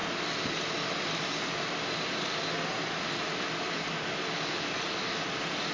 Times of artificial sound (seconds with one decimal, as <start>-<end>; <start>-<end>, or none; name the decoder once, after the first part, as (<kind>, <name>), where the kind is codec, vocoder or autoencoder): none